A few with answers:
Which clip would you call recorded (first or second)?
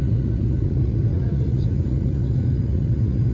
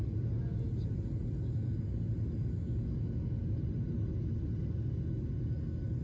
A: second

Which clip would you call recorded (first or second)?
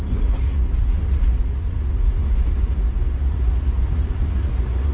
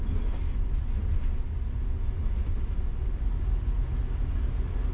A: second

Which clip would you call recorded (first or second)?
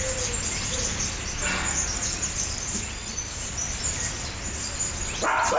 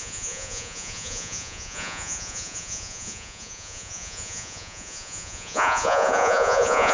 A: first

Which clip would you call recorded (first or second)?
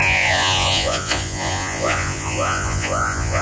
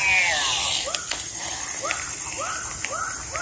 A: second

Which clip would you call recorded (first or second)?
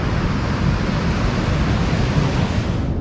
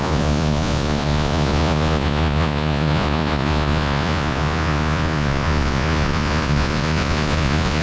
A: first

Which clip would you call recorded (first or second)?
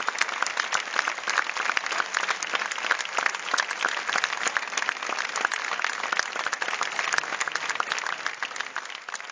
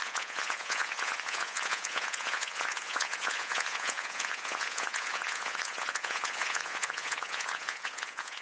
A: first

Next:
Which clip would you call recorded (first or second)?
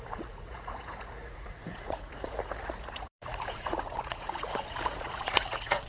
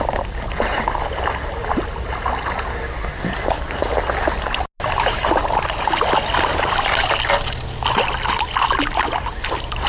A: second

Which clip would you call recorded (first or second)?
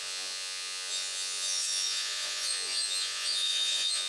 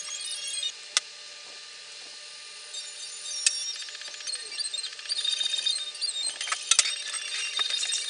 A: second